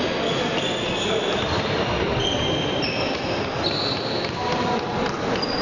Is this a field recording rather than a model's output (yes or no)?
yes